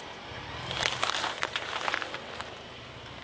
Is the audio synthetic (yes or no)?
no